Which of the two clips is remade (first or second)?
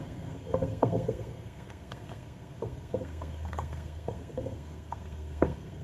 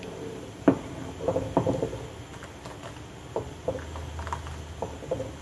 first